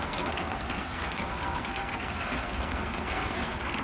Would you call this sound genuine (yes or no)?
no